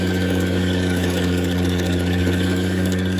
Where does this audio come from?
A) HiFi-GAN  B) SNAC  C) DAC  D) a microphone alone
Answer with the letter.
C